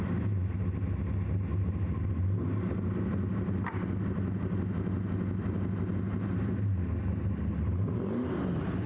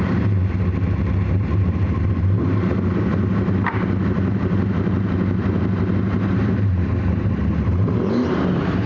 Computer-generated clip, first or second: second